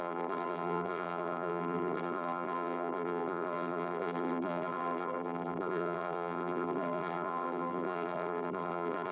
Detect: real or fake fake